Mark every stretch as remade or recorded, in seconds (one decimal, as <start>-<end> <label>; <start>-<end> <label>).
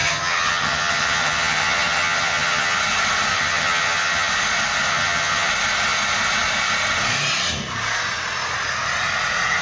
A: 0.0-2.8 remade; 2.8-3.3 recorded; 3.3-4.3 remade; 4.3-4.9 recorded; 4.9-5.5 remade; 5.5-9.6 recorded